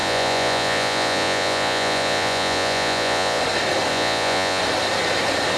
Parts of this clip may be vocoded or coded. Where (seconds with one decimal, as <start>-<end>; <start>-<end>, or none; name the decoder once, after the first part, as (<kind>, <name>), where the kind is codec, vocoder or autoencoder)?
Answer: 0.0-3.4 (vocoder, Vocos); 3.9-4.6